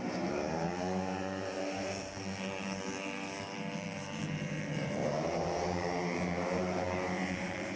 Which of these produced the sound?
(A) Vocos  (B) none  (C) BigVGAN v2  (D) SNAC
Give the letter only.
C